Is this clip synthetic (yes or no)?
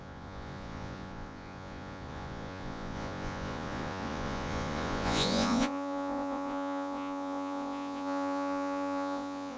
yes